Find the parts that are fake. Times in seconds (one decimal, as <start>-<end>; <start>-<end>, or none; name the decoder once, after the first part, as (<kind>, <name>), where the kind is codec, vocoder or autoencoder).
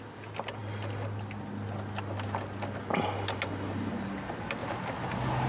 none